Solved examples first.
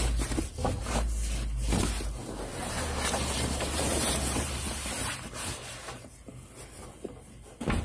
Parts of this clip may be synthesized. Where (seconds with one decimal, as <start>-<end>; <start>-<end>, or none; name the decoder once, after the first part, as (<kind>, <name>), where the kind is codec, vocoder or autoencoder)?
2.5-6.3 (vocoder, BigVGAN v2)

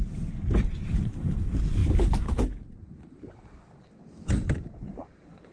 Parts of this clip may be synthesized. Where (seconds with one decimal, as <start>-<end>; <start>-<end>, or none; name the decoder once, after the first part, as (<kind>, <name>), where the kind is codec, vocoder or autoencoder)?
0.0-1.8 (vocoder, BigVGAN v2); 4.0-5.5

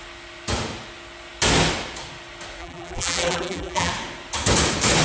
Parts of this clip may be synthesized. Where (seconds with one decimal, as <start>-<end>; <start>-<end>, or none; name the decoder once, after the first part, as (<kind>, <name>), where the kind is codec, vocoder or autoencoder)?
2.6-3.9 (vocoder, BigVGAN v2)